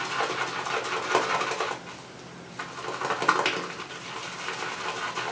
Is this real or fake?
real